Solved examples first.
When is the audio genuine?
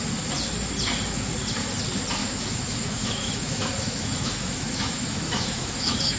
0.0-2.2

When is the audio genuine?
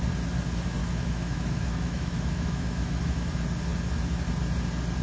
0.0-0.8; 3.3-5.0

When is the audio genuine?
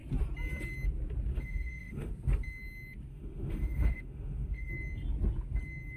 0.0-1.3; 2.1-3.1; 4.7-6.0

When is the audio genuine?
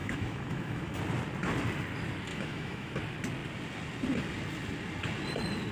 1.0-2.3; 3.0-5.7